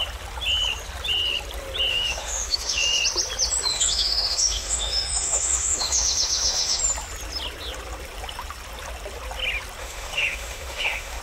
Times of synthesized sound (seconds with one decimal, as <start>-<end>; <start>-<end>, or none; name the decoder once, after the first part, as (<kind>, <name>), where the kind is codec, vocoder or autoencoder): 1.9-3.0 (autoencoder, DAC-VAE); 3.7-6.8; 9.8-11.2